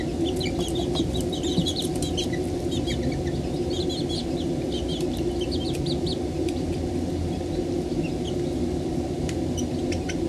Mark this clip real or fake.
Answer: real